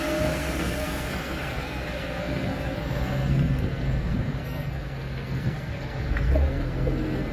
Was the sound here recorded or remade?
remade